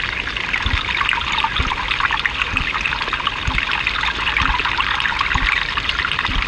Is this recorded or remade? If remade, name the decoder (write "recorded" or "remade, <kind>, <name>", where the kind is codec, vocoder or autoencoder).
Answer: recorded